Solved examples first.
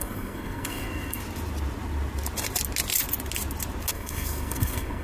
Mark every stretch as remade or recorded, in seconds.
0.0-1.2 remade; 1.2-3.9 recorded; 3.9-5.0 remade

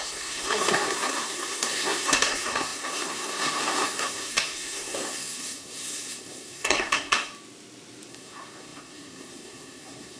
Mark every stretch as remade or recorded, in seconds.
0.0-7.3 remade; 7.3-8.1 recorded; 8.1-10.2 remade

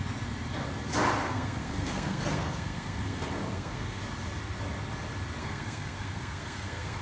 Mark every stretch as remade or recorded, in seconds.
0.0-1.2 recorded; 1.2-4.0 remade; 4.0-5.4 recorded; 5.4-7.0 remade

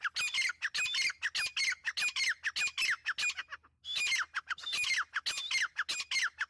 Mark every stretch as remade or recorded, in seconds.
0.0-6.5 recorded